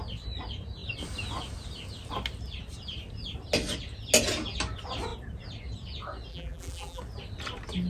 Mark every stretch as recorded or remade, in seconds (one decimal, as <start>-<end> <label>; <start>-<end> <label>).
0.0-6.3 recorded; 6.3-7.0 remade; 7.0-7.9 recorded